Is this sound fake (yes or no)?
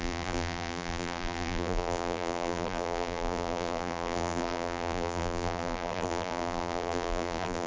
yes